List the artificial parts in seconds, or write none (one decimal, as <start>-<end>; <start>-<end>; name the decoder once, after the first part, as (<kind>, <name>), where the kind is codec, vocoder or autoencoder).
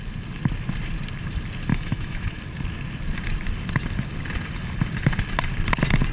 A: 1.7-2.4 (autoencoder, DAC-VAE)